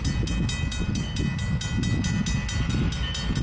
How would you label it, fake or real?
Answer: real